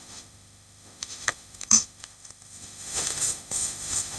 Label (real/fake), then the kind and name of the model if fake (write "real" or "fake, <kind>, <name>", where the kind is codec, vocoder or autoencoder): fake, autoencoder, DAC-VAE